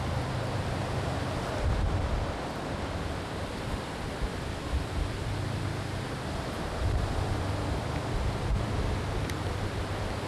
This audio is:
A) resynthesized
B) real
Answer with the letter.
A